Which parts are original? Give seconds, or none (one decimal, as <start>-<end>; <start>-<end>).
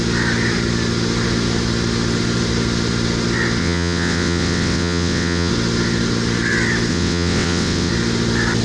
0.0-3.6; 5.5-6.9; 7.9-8.6